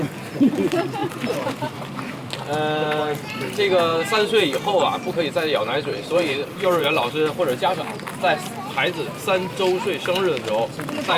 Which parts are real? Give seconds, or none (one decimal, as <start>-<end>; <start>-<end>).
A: 0.0-1.0; 2.3-3.9; 7.1-11.2